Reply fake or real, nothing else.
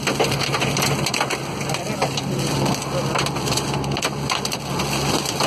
real